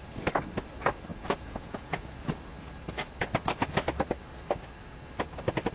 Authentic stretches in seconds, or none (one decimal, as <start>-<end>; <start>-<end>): 0.0-1.1; 2.0-5.7